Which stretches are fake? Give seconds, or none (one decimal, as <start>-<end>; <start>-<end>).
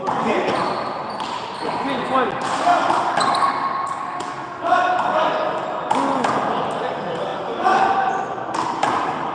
none